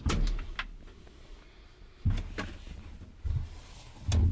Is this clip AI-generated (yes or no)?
no